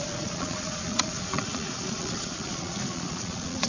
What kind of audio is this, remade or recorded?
remade